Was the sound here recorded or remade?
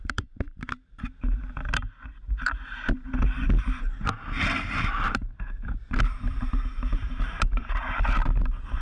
remade